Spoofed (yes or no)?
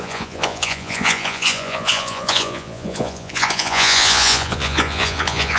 yes